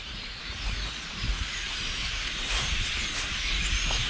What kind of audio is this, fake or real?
fake